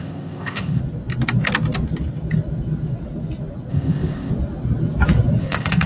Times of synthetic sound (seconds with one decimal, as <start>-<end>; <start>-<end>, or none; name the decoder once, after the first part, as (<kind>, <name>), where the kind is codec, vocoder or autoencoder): 0.0-0.8 (codec, ZipCodec); 3.7-4.3; 5.4-5.9